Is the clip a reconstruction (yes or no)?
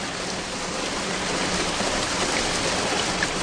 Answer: no